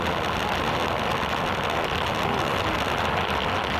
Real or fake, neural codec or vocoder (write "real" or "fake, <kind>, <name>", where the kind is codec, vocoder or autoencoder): real